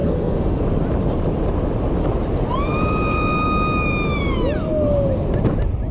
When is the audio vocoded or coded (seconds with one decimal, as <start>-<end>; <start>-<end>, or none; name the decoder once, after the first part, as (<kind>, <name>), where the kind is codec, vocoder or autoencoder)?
0.0-0.6 (codec, SNAC)